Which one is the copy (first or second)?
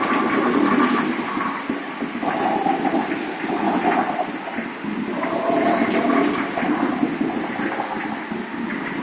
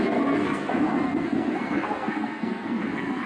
second